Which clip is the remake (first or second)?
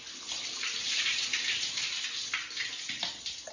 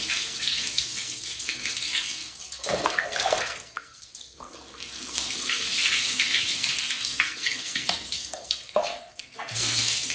second